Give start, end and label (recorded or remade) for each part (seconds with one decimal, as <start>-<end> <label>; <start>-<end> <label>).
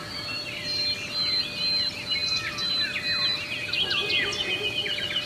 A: 0.0-5.3 recorded